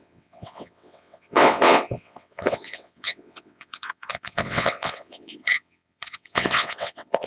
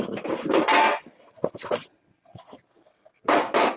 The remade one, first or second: first